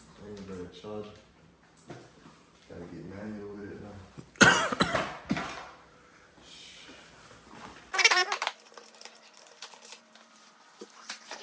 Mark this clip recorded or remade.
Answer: remade